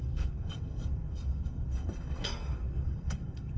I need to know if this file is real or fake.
fake